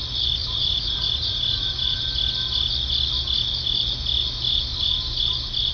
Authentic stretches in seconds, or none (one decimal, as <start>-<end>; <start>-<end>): 0.0-0.4; 2.0-5.7